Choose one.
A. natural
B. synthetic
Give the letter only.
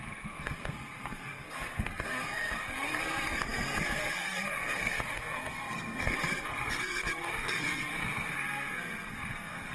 B